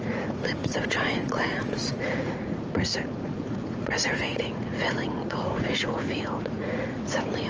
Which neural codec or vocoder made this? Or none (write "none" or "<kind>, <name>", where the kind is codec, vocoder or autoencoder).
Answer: vocoder, Vocos